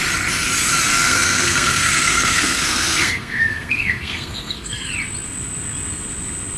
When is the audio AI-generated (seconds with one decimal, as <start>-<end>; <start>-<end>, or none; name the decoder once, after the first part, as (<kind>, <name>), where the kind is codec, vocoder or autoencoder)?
0.9-4.9 (codec, SNAC)